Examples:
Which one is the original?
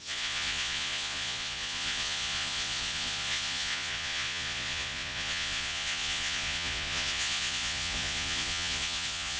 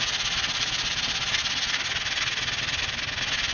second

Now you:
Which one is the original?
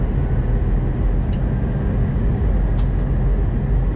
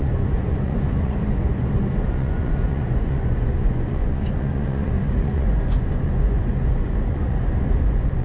first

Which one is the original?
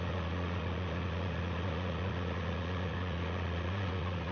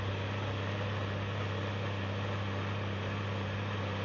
second